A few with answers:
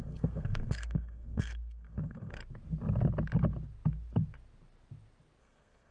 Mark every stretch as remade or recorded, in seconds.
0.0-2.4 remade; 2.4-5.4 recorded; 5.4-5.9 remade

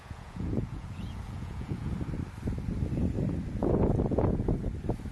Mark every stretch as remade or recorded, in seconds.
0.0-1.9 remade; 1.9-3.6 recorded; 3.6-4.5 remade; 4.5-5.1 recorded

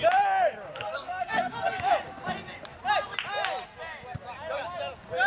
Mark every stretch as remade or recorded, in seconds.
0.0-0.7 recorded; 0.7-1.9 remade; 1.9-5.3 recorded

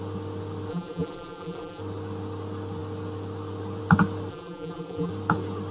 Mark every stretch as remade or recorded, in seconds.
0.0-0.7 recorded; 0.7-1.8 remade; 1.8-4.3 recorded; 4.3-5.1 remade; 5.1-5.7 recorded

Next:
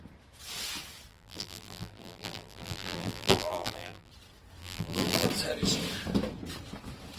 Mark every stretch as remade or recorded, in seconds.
0.0-1.1 recorded; 1.1-4.1 remade; 4.1-4.6 recorded; 4.6-5.3 remade; 5.3-7.2 recorded

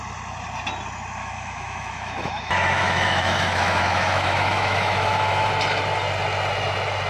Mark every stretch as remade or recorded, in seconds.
0.0-1.2 recorded; 1.2-5.5 remade; 5.5-7.1 recorded